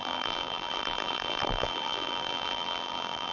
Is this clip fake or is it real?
fake